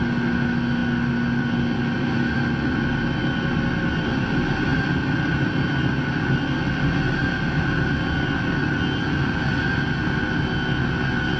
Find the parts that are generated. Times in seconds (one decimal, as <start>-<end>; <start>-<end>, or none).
none